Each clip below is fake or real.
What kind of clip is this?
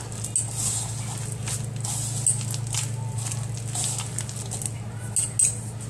real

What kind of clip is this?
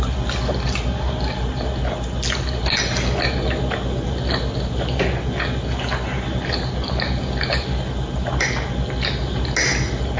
real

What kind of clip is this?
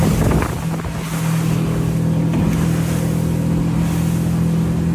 real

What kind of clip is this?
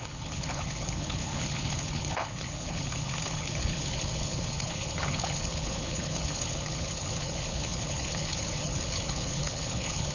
fake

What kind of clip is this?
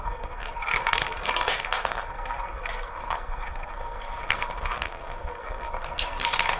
fake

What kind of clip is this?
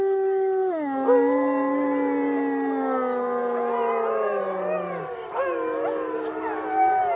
real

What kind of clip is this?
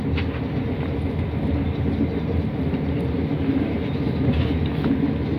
real